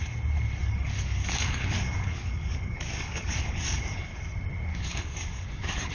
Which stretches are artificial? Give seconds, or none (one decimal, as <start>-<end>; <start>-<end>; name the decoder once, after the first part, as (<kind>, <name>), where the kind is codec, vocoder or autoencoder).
0.6-4.1 (codec, DAC); 4.7-5.9